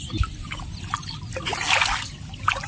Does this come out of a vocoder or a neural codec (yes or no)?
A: no